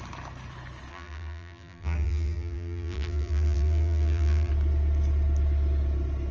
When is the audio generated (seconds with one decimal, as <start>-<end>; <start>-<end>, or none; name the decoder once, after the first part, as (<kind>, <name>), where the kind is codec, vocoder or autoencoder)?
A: 0.9-4.5 (vocoder, BigVGAN v2)